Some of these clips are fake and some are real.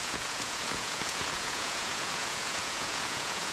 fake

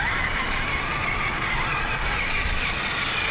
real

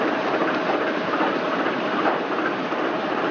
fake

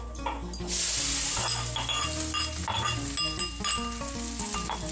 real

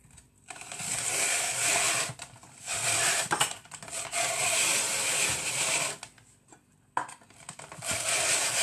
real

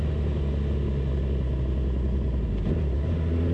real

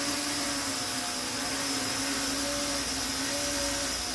real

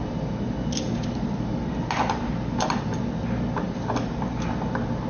real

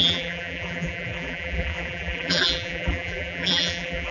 fake